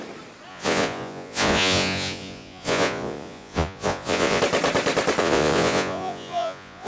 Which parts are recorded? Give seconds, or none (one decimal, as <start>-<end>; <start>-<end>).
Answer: 0.0-0.5; 4.4-5.2